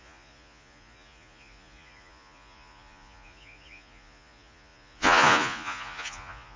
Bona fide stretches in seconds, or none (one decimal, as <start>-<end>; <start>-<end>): none